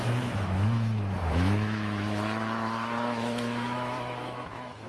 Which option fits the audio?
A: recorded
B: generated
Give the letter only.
B